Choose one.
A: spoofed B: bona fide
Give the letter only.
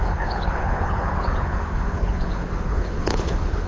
A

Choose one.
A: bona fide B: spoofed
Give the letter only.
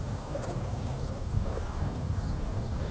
B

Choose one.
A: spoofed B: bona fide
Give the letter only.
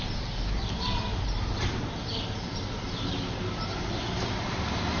B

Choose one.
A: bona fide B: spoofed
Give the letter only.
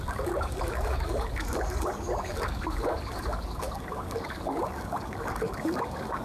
B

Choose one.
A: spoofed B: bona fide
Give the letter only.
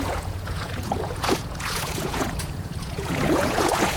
A